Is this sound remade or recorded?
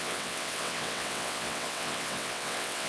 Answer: remade